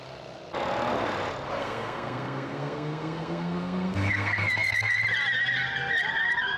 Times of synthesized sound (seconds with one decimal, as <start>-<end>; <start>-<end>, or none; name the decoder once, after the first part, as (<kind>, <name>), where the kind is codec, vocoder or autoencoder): 1.6-5.0 (codec, SNAC)